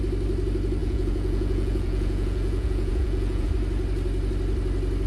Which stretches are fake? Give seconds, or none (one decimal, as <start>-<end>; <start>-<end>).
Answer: 0.8-3.5